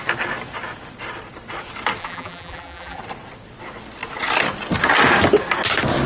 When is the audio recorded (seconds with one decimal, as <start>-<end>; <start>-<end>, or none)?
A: 0.0-2.0; 3.0-6.1